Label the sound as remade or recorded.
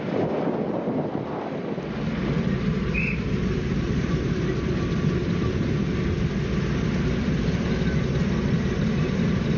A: recorded